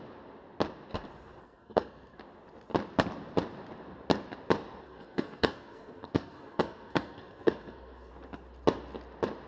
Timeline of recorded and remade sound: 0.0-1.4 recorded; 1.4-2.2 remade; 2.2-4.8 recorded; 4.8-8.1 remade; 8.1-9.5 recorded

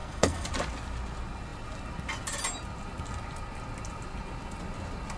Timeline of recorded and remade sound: 0.0-0.5 remade; 0.5-5.2 recorded

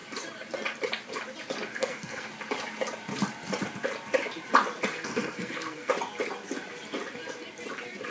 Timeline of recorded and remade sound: 0.0-1.7 recorded; 1.7-2.3 remade; 2.3-4.9 recorded; 4.9-5.9 remade; 5.9-8.1 recorded